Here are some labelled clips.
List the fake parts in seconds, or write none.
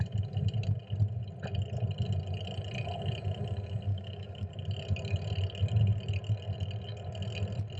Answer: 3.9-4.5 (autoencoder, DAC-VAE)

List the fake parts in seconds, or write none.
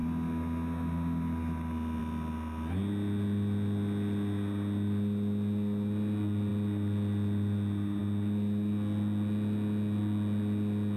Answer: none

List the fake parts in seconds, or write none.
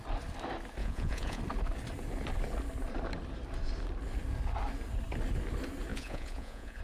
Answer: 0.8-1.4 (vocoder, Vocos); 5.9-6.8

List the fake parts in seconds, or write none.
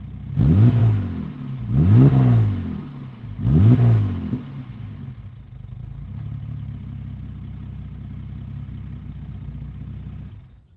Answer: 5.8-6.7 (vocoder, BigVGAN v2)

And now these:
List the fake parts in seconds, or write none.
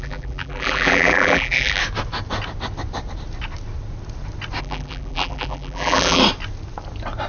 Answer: 0.0-1.8 (vocoder, BigVGAN v2); 4.6-6.2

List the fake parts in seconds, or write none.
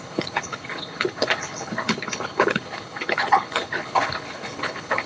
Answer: 0.0-5.1 (codec, HILCodec)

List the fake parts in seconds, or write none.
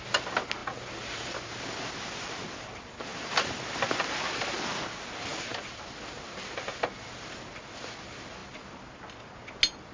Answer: none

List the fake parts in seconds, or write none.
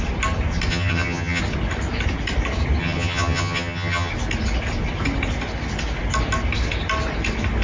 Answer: 0.7-1.4 (vocoder, HiFi-GAN); 2.8-4.1